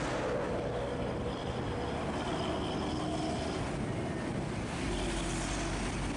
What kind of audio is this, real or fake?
real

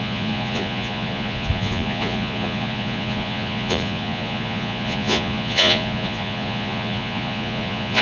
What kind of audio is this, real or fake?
fake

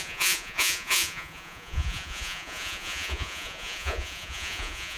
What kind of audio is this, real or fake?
fake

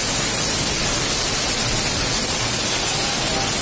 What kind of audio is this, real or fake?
real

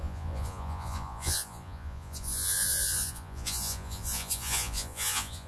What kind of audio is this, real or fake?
fake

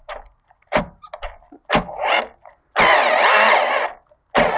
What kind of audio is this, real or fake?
real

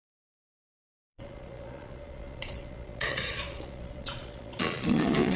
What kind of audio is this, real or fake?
fake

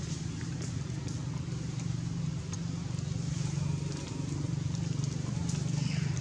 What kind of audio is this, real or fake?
real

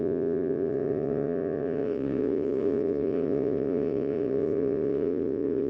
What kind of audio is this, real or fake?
fake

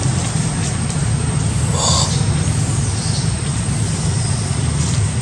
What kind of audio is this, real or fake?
real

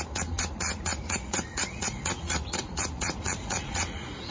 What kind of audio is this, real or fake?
fake